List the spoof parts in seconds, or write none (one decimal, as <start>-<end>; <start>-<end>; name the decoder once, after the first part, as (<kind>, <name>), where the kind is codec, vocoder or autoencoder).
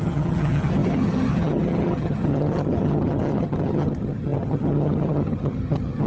0.0-6.1 (vocoder, HiFi-GAN)